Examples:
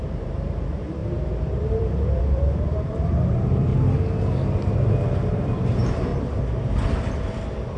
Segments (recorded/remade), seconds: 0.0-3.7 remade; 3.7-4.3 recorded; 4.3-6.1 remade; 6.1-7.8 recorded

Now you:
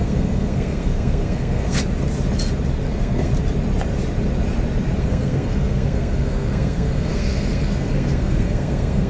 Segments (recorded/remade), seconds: 0.0-1.8 remade; 1.8-2.9 recorded; 2.9-3.3 remade; 3.3-5.0 recorded; 5.0-9.1 remade

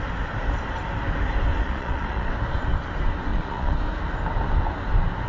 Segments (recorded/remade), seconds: 0.0-1.5 recorded; 1.5-2.3 remade; 2.3-3.3 recorded; 3.3-3.8 remade; 3.8-5.3 recorded

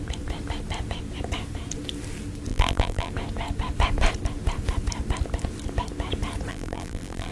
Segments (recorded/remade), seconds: 0.0-2.5 recorded; 2.5-3.1 remade; 3.1-6.5 recorded; 6.5-7.3 remade

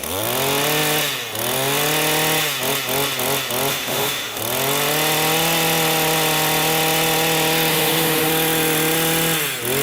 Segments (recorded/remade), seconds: 0.0-3.7 recorded; 3.7-4.4 remade; 4.4-7.7 recorded; 7.7-8.3 remade; 8.3-9.8 recorded

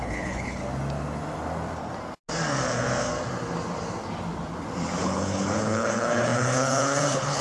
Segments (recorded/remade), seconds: 0.0-0.6 remade; 0.6-5.0 recorded; 5.0-7.4 remade